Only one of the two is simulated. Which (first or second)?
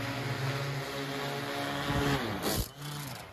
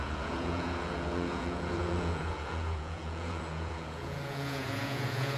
second